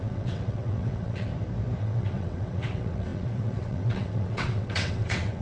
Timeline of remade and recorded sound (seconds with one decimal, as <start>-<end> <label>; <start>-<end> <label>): 0.0-1.3 remade; 1.3-1.8 recorded; 1.8-5.4 remade